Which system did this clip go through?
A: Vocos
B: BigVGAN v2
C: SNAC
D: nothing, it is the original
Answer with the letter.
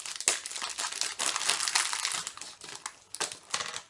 D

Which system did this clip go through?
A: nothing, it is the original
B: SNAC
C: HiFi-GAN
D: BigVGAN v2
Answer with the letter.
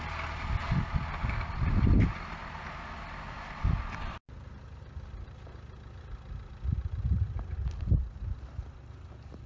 A